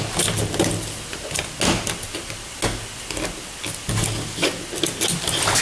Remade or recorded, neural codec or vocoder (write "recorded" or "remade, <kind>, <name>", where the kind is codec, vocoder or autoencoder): recorded